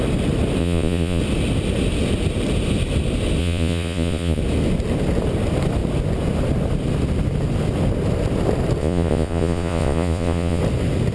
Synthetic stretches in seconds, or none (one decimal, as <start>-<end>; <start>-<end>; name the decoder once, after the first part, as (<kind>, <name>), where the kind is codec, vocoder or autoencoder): 0.6-1.2 (vocoder, Vocos); 3.4-4.4; 8.8-10.6